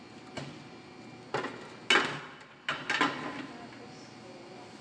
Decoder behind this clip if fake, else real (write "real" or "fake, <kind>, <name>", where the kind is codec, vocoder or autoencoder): real